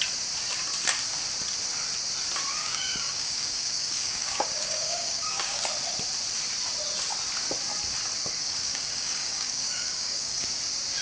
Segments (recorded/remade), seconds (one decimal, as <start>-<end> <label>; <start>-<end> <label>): 0.0-2.6 recorded; 2.6-5.6 remade; 5.6-8.4 recorded; 8.4-10.6 remade; 10.6-11.0 recorded